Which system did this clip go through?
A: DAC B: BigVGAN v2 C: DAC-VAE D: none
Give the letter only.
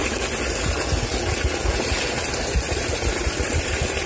D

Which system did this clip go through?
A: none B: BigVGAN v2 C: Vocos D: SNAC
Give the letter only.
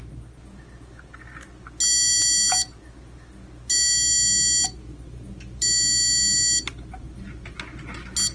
A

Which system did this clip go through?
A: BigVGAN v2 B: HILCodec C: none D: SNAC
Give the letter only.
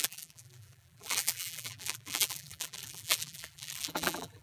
A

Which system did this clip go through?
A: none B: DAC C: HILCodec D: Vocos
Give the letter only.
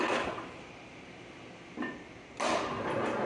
A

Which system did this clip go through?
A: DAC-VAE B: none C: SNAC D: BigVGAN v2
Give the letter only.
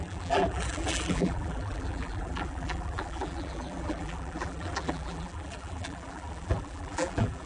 D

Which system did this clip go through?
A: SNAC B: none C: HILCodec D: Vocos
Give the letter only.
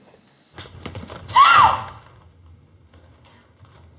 B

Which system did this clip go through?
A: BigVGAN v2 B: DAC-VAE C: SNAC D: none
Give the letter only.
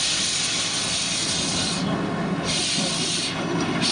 D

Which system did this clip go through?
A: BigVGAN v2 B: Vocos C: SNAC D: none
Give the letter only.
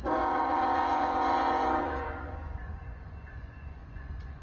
B